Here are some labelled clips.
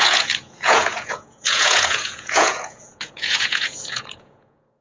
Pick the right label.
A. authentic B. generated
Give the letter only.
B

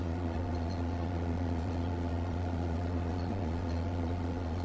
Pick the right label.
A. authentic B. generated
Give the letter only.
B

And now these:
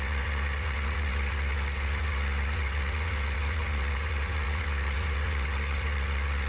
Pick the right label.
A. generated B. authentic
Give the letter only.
A